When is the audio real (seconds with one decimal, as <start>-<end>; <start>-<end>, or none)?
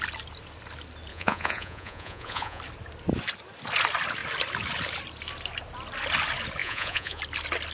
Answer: 0.0-1.1; 2.6-6.6; 7.2-7.7